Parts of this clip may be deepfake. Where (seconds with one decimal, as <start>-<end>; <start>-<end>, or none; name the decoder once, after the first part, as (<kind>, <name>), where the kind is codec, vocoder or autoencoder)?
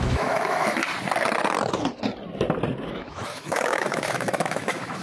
0.0-0.8 (autoencoder, DAC-VAE); 2.8-5.0